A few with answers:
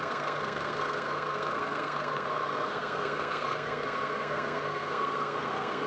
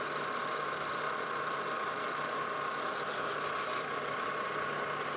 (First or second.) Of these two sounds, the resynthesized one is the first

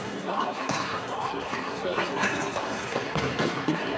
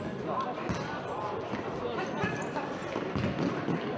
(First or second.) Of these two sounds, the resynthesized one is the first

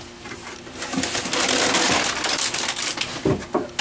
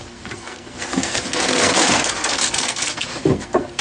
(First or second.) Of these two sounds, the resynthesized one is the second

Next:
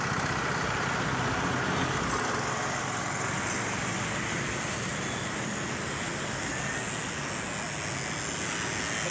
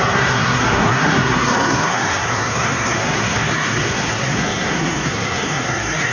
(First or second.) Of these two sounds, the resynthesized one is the second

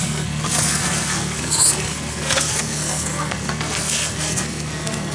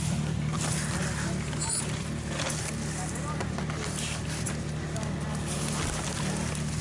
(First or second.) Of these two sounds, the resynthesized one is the first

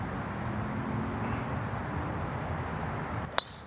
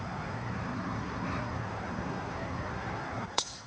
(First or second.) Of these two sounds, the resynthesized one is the second